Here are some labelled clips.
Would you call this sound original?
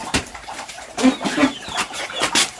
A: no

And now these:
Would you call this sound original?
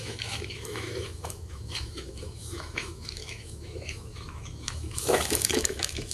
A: no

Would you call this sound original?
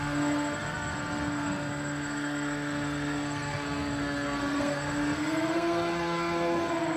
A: no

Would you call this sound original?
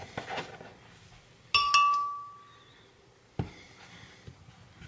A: yes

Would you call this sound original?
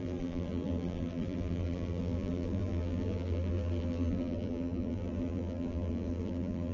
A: no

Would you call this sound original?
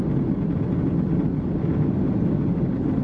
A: yes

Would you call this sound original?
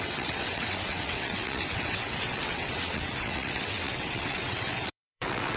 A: no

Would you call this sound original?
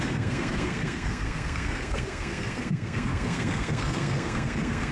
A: no